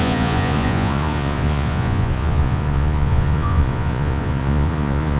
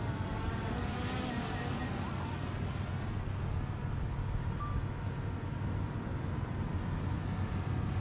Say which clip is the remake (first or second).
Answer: first